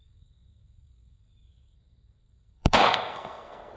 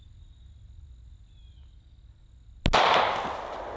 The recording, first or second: second